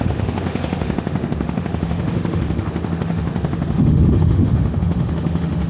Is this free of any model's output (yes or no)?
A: no